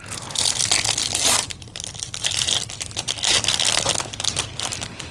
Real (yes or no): yes